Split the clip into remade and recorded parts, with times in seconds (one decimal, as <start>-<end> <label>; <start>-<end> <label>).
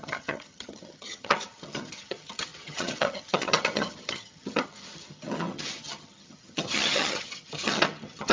0.0-8.3 remade